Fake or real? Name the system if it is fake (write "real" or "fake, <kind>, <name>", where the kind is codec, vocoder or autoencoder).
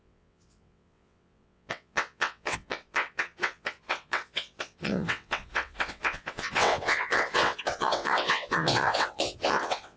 fake, vocoder, WaveNeXt